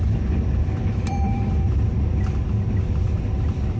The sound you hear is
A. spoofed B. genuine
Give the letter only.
A